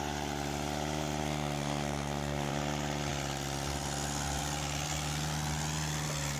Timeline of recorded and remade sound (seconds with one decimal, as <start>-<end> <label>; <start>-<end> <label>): 0.0-1.2 recorded; 1.2-2.5 remade; 2.5-6.4 recorded